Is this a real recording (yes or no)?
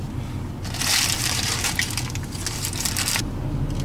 yes